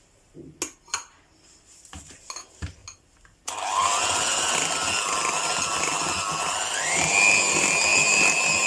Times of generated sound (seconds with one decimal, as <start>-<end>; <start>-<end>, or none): none